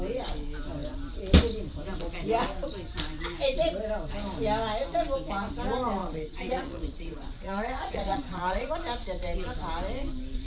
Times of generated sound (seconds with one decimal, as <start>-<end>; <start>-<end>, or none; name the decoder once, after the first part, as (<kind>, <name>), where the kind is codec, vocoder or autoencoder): 6.0-8.7 (vocoder, Vocos)